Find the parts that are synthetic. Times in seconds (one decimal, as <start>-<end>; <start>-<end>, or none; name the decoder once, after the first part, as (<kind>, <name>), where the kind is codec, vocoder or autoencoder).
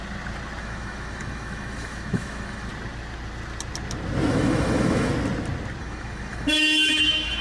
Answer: 0.6-2.7 (autoencoder, DAC-VAE); 4.3-5.1; 5.8-7.4